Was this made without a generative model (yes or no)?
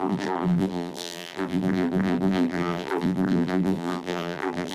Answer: no